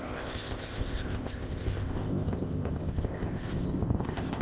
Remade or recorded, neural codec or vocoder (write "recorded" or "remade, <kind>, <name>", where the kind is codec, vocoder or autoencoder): remade, codec, ZipCodec